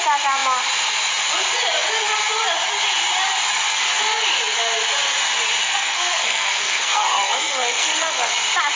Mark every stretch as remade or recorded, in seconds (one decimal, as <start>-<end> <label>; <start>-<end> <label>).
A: 0.0-5.6 recorded; 5.6-8.3 remade; 8.3-8.8 recorded